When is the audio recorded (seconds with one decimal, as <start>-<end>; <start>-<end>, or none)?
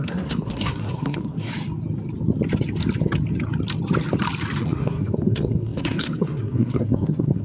1.5-4.6